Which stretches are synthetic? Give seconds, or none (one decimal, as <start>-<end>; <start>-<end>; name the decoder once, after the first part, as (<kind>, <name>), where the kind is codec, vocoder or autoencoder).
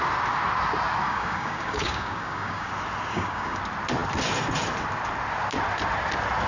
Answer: 1.0-2.7 (codec, DAC); 3.1-3.6